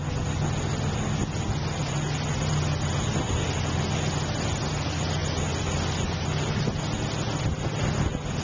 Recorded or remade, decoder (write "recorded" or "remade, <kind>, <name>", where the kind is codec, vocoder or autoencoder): recorded